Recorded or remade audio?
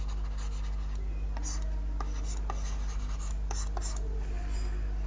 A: recorded